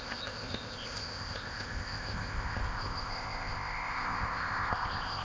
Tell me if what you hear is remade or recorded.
remade